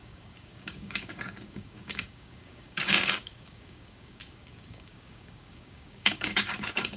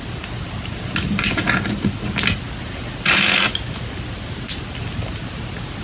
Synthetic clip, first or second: first